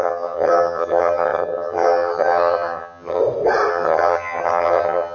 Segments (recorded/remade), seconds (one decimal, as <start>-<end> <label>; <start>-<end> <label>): 0.0-3.2 remade; 3.2-3.7 recorded; 3.7-5.1 remade